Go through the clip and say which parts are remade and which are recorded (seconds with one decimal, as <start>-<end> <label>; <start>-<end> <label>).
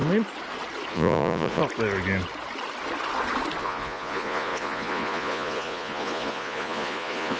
0.0-0.9 recorded; 0.9-1.6 remade; 1.6-3.6 recorded; 3.6-7.4 remade